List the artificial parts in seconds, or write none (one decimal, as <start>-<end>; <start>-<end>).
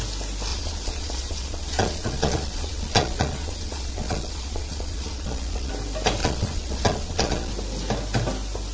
0.5-5.7; 6.2-7.5